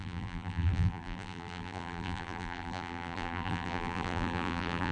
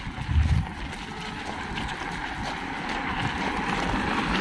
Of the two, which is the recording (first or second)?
second